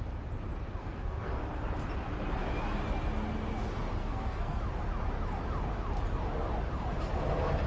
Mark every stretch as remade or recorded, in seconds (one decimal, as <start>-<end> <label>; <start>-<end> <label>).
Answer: 0.0-0.8 recorded; 0.8-1.4 remade; 1.4-4.0 recorded; 4.0-4.6 remade; 4.6-7.7 recorded